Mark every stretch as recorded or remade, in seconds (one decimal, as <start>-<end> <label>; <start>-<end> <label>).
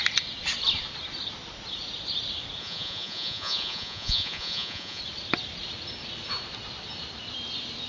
0.0-2.6 recorded; 2.6-5.0 remade; 5.0-7.9 recorded